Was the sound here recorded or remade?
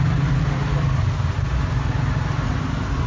recorded